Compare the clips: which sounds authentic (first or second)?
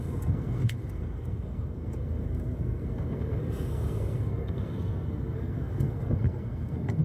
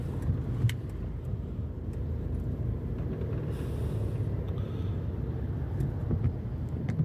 second